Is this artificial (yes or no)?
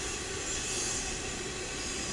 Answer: no